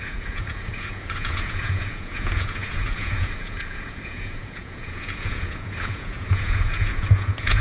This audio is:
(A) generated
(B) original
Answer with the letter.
A